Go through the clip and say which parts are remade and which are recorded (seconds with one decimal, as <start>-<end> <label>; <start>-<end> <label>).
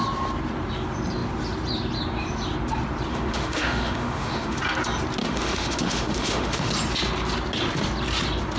0.0-3.1 recorded; 3.1-4.6 remade; 4.6-5.2 recorded; 5.2-6.7 remade; 6.7-8.6 recorded